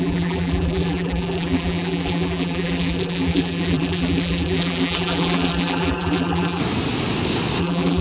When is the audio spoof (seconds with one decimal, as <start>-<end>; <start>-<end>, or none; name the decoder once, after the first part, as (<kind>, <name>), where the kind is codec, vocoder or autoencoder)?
0.0-6.6 (vocoder, BigVGAN v2); 7.6-8.0